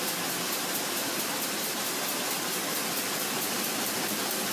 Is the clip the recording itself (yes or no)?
yes